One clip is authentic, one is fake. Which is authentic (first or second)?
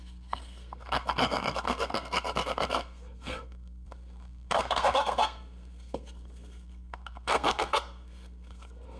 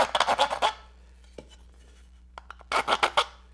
second